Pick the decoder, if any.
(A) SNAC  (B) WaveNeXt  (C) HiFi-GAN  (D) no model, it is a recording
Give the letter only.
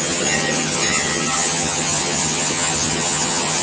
C